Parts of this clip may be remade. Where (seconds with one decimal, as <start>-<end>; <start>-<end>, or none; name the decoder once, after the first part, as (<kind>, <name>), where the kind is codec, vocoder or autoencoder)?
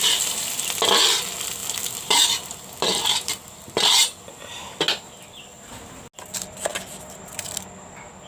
none